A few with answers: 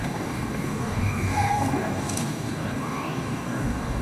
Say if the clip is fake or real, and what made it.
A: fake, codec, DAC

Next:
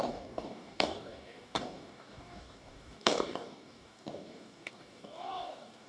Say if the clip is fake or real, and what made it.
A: fake, codec, DAC